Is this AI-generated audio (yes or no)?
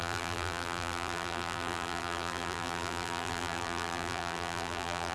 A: yes